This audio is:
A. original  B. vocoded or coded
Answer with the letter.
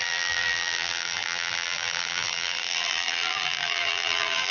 B